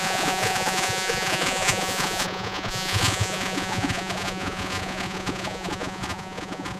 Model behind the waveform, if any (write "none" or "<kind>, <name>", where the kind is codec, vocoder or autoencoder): vocoder, Vocos